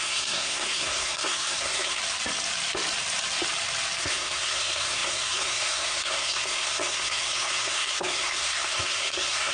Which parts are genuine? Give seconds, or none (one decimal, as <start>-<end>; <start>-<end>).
2.0-4.0